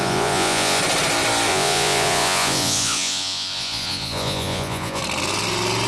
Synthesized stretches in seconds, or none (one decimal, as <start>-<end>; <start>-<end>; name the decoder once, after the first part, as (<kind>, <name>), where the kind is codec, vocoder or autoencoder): 0.0-0.8 (vocoder, Vocos); 1.5-5.0